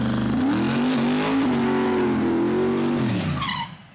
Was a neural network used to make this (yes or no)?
no